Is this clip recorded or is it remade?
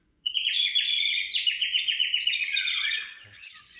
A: remade